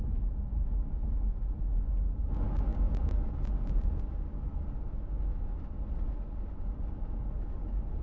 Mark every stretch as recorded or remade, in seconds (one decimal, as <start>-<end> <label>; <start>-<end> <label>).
0.0-8.0 recorded